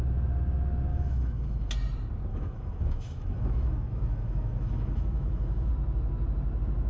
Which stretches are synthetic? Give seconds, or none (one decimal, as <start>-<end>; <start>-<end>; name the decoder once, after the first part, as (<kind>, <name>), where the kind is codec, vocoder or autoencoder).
0.9-1.7 (autoencoder, DAC-VAE); 2.3-5.7